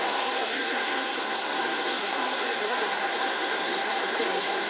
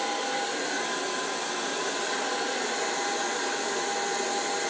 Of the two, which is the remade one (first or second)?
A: first